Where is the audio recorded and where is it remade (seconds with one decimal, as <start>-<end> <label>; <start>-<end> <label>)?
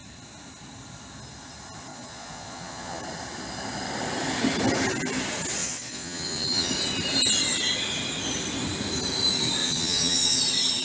0.0-1.9 recorded; 1.9-3.0 remade; 3.0-5.6 recorded; 5.6-6.7 remade; 6.7-9.6 recorded; 9.6-10.4 remade; 10.4-10.8 recorded